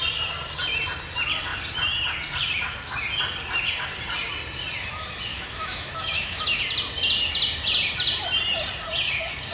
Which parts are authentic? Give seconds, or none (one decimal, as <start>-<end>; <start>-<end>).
0.0-5.3; 6.6-9.5